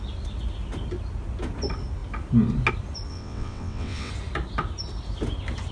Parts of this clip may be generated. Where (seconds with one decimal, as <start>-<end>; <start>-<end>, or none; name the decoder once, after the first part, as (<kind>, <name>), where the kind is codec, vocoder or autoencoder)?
3.1-4.1 (vocoder, WaveNeXt)

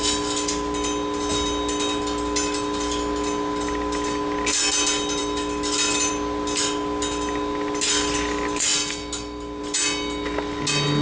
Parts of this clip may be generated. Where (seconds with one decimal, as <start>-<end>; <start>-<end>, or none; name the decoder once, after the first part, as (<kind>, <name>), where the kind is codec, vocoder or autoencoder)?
none